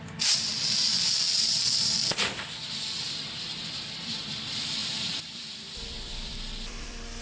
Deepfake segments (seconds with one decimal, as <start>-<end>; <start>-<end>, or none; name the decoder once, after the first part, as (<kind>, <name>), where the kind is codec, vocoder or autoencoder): 0.0-0.5 (vocoder, BigVGAN v2); 2.8-7.2